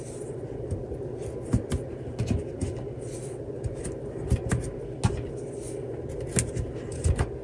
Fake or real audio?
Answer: real